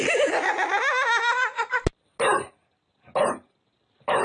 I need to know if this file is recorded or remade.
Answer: recorded